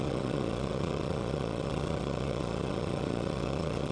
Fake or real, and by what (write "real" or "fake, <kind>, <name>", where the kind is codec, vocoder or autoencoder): fake, vocoder, Vocos